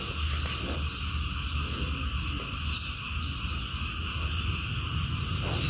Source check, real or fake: real